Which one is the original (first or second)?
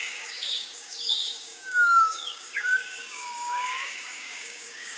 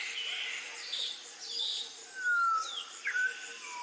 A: second